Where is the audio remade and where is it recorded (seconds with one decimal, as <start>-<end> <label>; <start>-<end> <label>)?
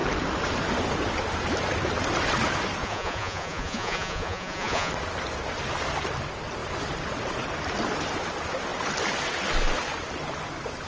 0.0-2.8 recorded; 2.8-4.9 remade; 4.9-10.9 recorded